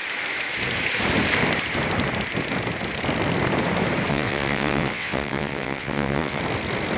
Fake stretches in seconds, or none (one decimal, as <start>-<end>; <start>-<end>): 4.1-6.4